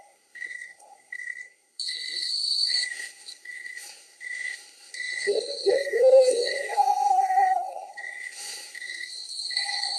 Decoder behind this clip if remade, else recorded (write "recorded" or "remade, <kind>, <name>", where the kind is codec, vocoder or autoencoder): remade, codec, SNAC